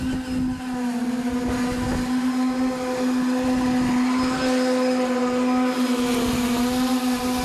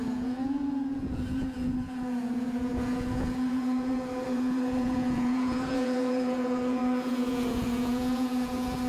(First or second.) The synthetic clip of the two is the second